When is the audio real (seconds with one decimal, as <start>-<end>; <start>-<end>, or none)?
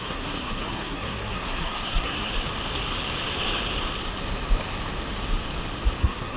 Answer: 2.3-6.0